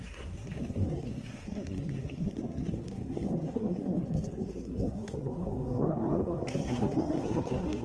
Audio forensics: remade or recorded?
remade